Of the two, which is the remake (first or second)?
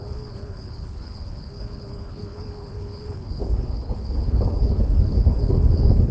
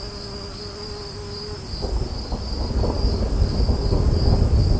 first